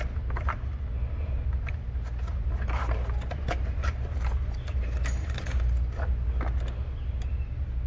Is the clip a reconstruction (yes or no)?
no